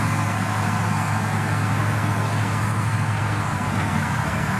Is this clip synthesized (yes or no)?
yes